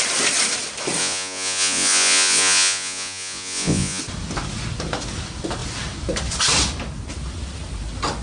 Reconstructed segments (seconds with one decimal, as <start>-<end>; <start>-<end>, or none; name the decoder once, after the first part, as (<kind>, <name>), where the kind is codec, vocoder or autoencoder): 1.0-4.0 (vocoder, Vocos)